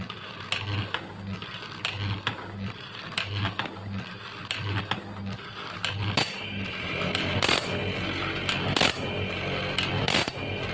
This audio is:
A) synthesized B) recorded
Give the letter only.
B